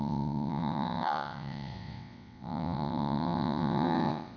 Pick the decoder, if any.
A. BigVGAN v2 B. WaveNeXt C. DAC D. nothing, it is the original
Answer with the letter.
B